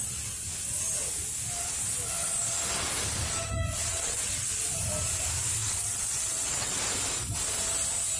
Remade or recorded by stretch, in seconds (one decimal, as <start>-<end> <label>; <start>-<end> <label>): 0.0-3.9 recorded; 3.9-4.6 remade; 4.6-5.6 recorded; 5.6-6.8 remade; 6.8-8.2 recorded